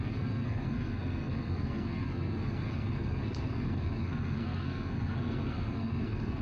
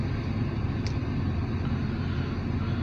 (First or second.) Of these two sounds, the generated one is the first